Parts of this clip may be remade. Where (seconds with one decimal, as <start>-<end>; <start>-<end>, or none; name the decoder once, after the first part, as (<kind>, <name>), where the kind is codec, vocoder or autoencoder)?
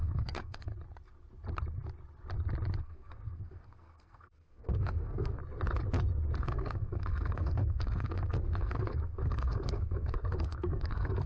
0.0-0.7 (codec, SNAC); 2.8-5.4; 6.4-11.3